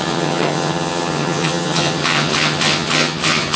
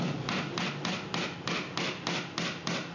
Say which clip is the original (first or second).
second